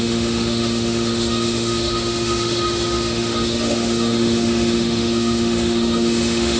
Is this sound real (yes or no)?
no